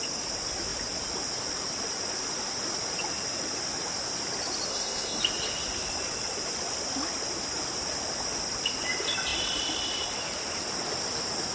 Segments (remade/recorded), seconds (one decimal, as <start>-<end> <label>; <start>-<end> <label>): 0.0-4.7 recorded; 4.7-5.2 remade; 5.2-11.5 recorded